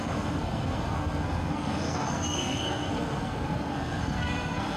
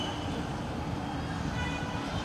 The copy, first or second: first